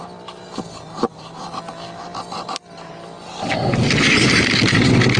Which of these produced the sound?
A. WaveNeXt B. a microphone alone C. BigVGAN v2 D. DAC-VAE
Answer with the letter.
B